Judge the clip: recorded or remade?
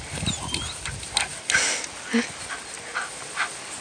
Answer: recorded